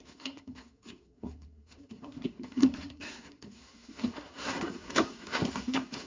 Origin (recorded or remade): remade